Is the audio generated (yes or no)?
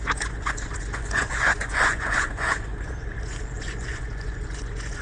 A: yes